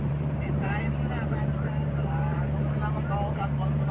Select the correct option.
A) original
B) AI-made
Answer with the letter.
B